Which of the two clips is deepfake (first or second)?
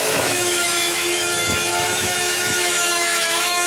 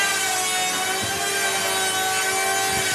first